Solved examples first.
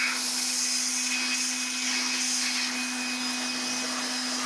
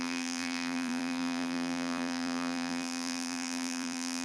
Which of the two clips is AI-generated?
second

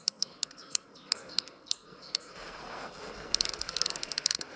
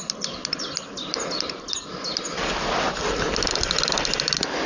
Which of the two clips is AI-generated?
first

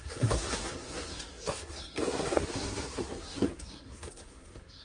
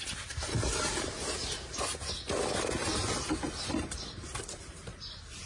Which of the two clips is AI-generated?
first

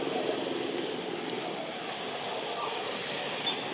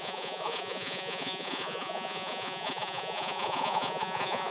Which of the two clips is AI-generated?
second